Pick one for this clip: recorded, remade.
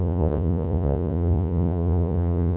remade